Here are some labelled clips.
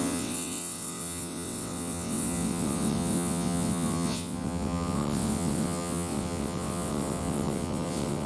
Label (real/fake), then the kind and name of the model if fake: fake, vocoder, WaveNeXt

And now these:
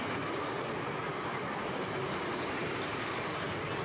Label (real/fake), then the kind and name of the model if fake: real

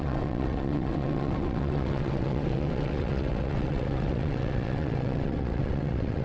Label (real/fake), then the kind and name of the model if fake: fake, vocoder, WaveNeXt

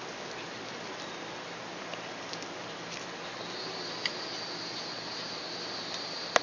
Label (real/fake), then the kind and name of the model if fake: real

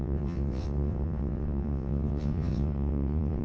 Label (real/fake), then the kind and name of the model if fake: fake, vocoder, WaveNeXt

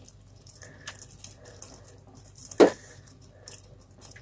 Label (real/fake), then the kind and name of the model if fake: real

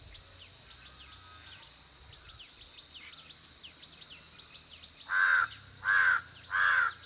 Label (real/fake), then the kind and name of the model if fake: real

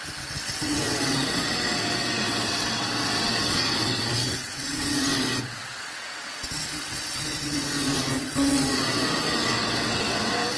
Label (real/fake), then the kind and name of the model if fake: fake, vocoder, WaveNeXt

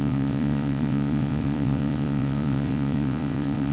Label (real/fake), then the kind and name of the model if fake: fake, vocoder, WaveNeXt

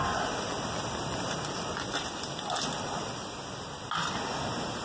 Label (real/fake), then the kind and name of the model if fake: real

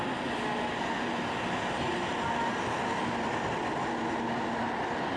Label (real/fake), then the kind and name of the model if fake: real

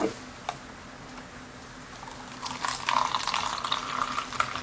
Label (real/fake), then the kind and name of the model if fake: real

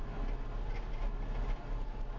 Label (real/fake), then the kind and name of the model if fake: real